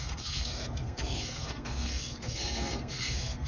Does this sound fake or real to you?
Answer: fake